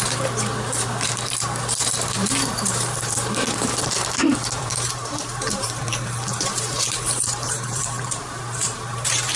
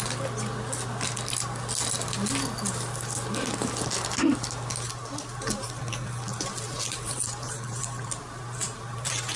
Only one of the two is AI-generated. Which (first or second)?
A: first